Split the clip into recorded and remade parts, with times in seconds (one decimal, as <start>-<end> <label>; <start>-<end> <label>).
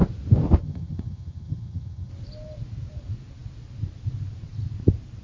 0.0-0.6 recorded; 0.6-2.1 remade; 2.1-5.2 recorded